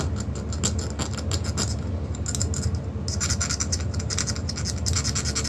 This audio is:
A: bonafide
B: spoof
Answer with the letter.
A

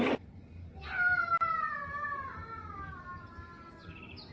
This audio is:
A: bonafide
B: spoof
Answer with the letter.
A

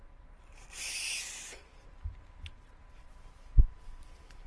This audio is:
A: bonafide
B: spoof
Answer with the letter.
B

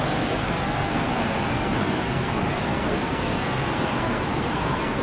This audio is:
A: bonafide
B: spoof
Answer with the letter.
B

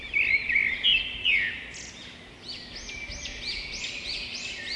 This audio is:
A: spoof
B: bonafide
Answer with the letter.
B